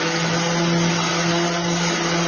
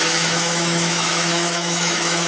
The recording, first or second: first